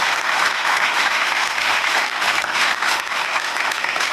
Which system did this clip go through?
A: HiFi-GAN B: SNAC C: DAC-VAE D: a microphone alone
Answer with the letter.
C